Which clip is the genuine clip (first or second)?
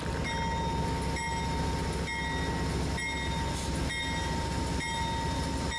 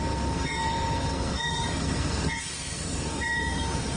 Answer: first